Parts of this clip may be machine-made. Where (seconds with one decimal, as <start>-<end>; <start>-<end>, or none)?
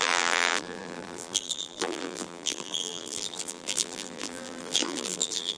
0.0-5.6